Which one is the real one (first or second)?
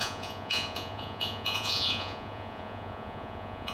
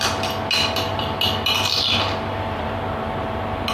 second